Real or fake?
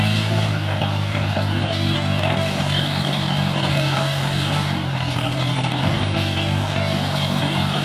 fake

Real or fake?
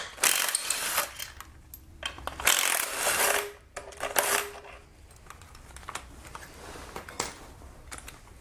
real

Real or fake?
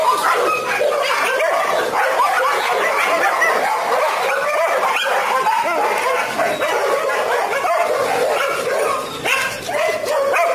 real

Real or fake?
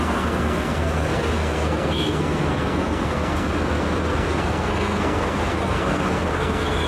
fake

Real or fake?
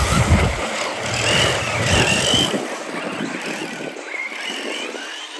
fake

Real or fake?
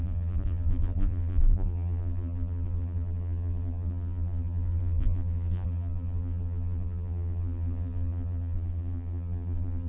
fake